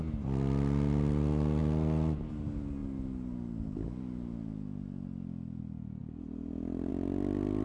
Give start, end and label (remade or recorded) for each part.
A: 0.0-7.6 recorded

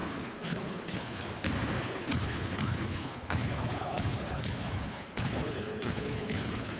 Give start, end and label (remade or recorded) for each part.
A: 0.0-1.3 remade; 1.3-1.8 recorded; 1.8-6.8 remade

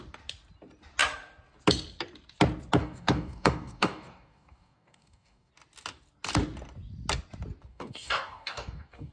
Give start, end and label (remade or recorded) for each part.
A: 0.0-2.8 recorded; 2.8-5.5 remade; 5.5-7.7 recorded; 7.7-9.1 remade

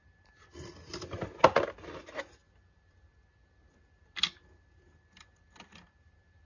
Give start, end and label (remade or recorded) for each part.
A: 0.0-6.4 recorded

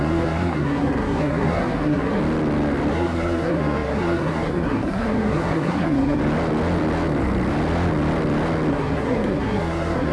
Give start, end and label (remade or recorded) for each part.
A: 0.0-2.2 remade; 2.2-2.9 recorded; 2.9-6.2 remade; 6.2-8.7 recorded; 8.7-10.1 remade

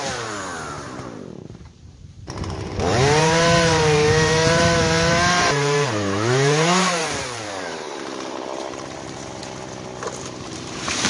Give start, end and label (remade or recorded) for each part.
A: 0.0-9.4 remade; 9.4-10.2 recorded; 10.2-11.1 remade